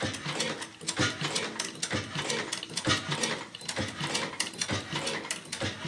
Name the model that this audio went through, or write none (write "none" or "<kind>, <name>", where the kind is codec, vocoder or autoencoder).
none